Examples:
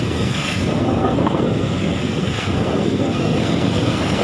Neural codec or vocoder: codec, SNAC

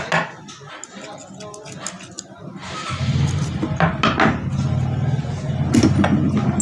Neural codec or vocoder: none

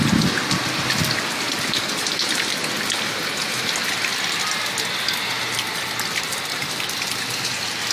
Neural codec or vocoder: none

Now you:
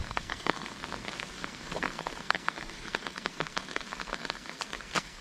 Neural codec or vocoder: codec, SNAC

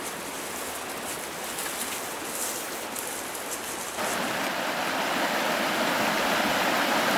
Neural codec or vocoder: none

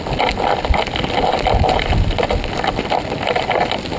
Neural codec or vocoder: none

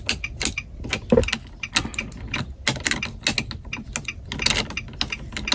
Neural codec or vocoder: none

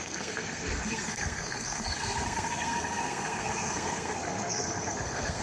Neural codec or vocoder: codec, SNAC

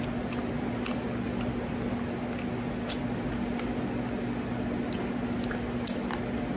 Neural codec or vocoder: none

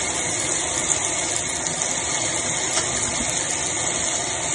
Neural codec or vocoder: none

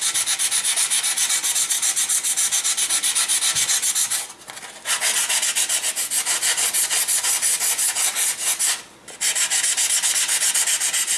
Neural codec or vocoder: none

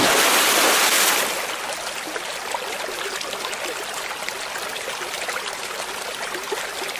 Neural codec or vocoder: none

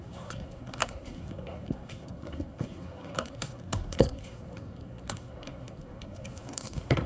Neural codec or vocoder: codec, SNAC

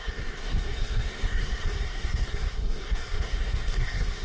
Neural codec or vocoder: codec, SNAC